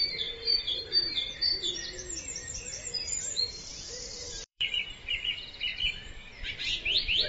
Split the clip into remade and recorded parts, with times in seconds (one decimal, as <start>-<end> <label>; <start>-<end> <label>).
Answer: 0.0-7.3 remade